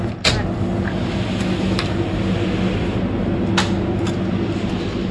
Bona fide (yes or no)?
yes